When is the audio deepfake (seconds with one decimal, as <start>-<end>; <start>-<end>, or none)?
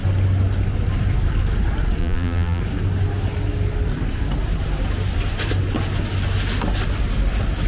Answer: 2.0-2.6